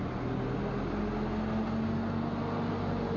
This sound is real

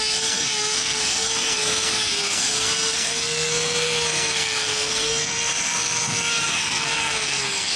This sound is fake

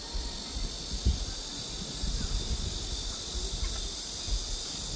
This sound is real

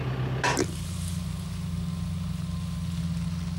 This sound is real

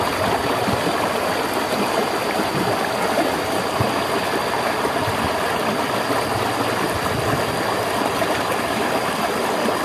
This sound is real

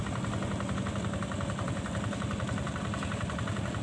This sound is real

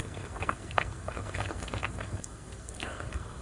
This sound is fake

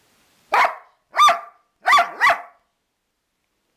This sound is real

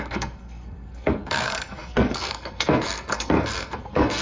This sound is fake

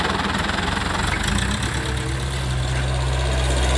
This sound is real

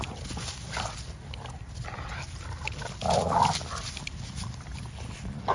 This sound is real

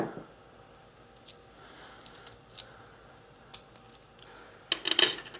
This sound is real